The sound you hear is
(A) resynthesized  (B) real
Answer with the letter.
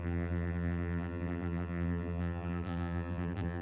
A